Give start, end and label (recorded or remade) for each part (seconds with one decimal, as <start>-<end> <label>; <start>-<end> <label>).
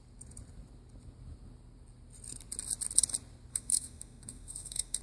0.0-3.5 recorded; 3.5-5.0 remade